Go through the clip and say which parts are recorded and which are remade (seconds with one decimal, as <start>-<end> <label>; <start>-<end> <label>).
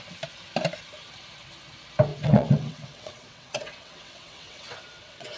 0.0-2.1 recorded; 2.1-5.4 remade